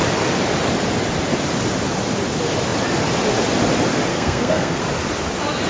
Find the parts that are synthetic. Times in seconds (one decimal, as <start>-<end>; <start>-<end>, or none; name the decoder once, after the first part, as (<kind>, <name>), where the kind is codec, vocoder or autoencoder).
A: 4.1-4.8 (codec, SNAC)